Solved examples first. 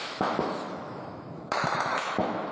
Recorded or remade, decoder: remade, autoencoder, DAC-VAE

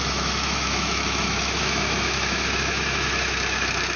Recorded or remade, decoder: remade, autoencoder, DAC-VAE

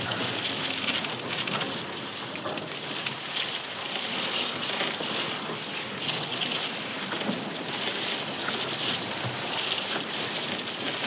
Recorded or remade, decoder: recorded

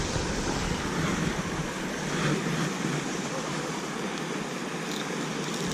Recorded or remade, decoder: recorded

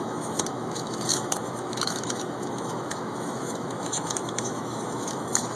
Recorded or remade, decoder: remade, autoencoder, DAC-VAE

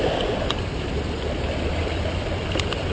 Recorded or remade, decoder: recorded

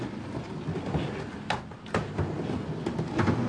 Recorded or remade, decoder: recorded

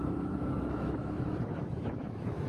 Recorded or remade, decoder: remade, autoencoder, DAC-VAE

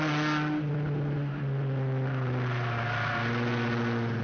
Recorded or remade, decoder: recorded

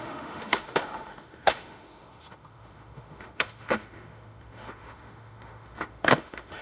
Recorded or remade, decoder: remade, autoencoder, DAC-VAE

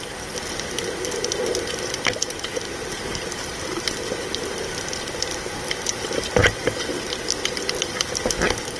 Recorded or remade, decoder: recorded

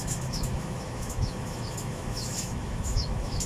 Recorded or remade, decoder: remade, autoencoder, DAC-VAE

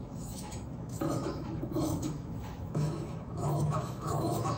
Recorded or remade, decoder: remade, autoencoder, DAC-VAE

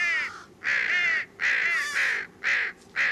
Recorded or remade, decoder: recorded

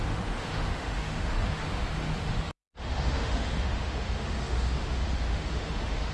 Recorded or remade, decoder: remade, autoencoder, DAC-VAE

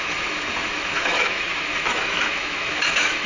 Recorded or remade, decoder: remade, autoencoder, DAC-VAE